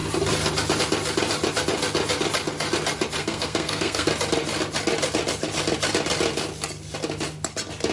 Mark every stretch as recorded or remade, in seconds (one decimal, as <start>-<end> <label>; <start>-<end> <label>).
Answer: 0.0-3.2 recorded; 3.2-4.1 remade; 4.1-7.9 recorded